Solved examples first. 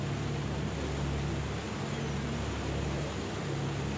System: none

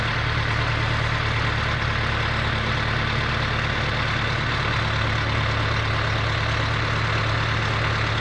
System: none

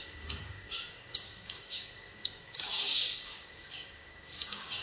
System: codec, DAC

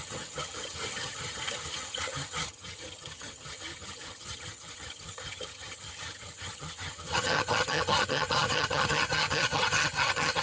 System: vocoder, HiFi-GAN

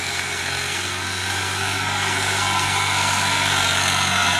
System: codec, SNAC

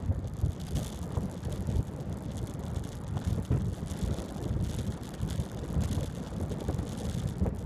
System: none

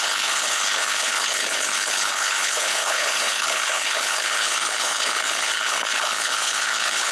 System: codec, HILCodec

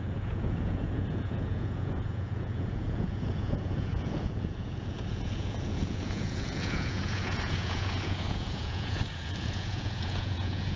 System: vocoder, Vocos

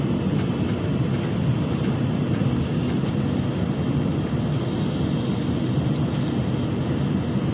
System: none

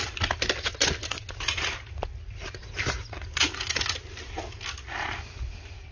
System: none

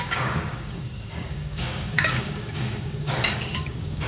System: codec, DAC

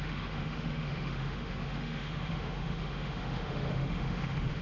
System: autoencoder, DAC-VAE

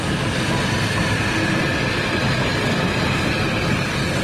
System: none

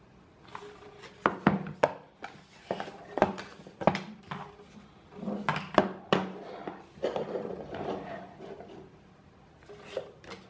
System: none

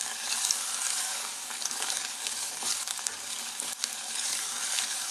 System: codec, DAC